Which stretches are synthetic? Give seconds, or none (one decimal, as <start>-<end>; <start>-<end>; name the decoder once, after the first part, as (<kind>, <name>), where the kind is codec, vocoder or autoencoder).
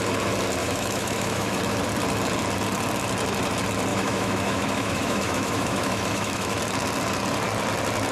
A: 0.6-1.6 (autoencoder, DAC-VAE); 3.9-6.6